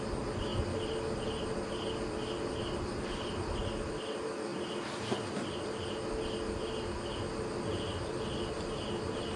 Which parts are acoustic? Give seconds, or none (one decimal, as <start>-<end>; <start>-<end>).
0.0-9.4

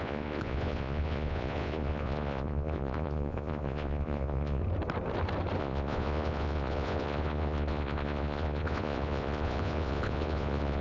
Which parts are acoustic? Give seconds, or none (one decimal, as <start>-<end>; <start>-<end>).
4.6-5.6

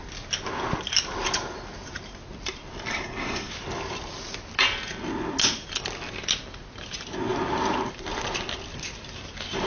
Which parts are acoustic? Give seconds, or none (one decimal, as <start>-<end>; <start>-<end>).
0.0-2.9; 3.5-9.7